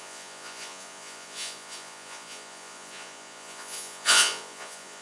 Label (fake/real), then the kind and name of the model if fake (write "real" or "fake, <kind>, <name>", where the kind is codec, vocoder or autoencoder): fake, vocoder, Vocos